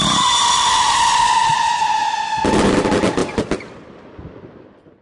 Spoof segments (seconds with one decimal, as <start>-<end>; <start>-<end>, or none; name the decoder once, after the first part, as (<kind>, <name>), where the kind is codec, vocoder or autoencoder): none